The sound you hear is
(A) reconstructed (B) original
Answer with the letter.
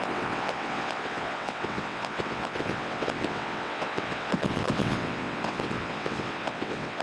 A